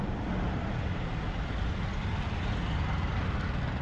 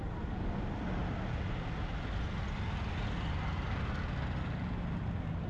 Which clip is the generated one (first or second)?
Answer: first